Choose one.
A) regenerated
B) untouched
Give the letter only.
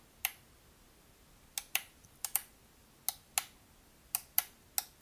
B